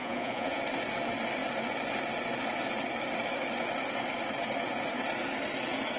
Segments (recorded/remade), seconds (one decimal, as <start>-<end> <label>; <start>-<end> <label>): 0.0-0.6 remade; 0.6-6.0 recorded